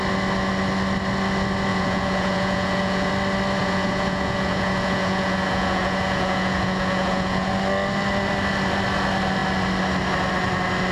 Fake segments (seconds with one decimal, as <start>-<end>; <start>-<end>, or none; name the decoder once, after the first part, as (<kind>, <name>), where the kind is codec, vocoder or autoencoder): 1.7-3.1 (vocoder, Vocos); 3.6-7.5